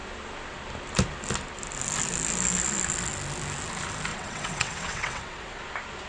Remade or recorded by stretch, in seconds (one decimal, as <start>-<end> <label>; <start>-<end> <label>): 0.0-4.1 recorded; 4.1-5.6 remade; 5.6-6.1 recorded